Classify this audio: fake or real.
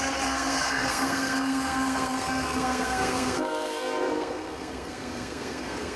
fake